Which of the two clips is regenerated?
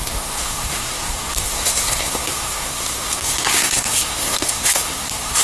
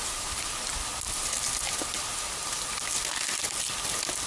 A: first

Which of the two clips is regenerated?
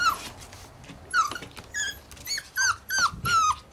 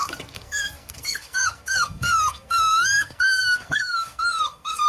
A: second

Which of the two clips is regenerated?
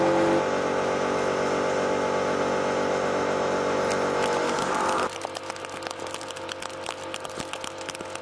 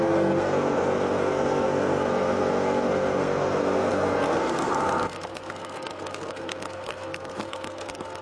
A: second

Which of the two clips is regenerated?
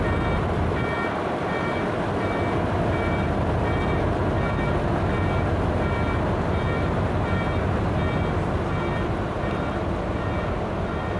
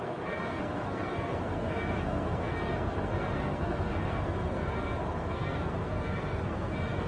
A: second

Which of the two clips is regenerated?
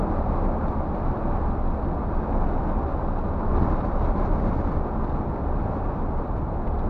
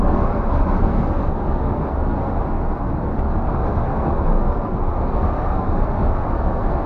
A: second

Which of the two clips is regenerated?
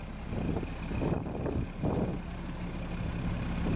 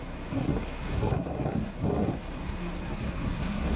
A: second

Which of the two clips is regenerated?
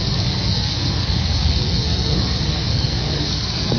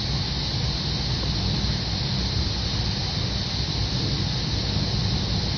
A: first